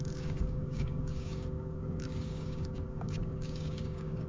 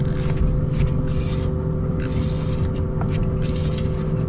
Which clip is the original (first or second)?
second